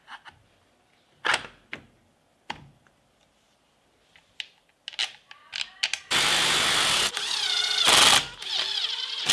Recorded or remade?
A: recorded